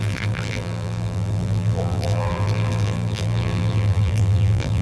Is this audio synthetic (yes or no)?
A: yes